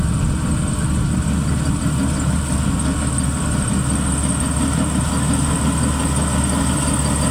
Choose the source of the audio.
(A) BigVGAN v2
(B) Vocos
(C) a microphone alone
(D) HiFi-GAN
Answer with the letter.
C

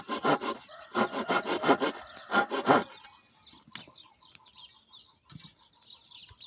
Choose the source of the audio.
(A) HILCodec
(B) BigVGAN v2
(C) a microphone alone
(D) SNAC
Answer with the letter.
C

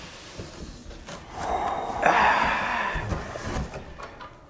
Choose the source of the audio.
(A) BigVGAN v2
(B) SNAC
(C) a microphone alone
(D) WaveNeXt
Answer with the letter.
C